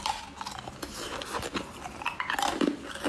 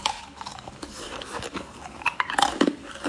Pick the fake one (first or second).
second